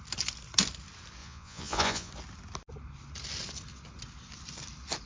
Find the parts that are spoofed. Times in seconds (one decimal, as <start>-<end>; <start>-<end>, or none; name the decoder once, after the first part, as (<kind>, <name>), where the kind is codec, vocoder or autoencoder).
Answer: 1.2-2.1 (vocoder, Vocos)